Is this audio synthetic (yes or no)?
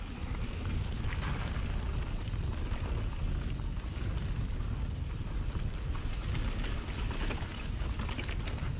no